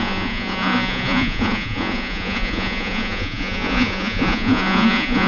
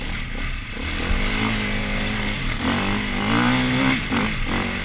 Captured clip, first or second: second